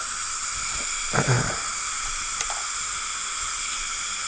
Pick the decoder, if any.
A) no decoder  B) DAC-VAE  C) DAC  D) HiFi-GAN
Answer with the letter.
A